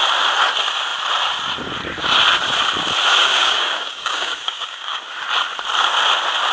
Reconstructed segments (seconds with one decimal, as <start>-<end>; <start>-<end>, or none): 3.2-5.0